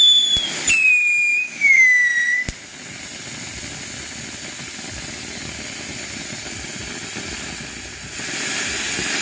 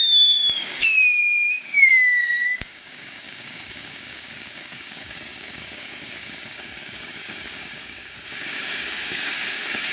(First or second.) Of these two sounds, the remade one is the second